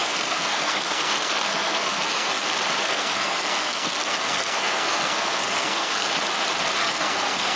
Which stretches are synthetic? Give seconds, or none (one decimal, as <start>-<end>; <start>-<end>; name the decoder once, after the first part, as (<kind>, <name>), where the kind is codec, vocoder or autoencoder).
0.0-2.4 (codec, SNAC); 2.8-6.1; 6.8-7.6